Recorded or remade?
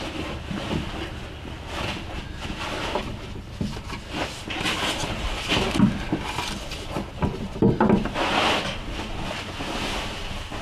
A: recorded